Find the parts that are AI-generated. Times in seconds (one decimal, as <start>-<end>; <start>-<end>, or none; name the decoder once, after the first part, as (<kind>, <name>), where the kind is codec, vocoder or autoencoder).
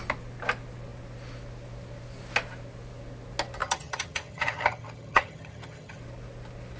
3.6-6.0 (vocoder, HiFi-GAN)